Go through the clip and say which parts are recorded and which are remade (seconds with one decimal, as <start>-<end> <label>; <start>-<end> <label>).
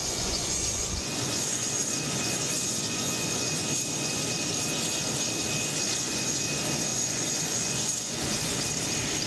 0.0-4.2 remade; 4.2-5.9 recorded; 5.9-6.4 remade; 6.4-6.9 recorded; 6.9-8.6 remade; 8.6-9.3 recorded